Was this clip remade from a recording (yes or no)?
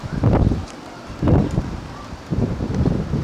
yes